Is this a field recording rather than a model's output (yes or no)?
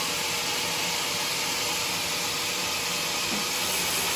yes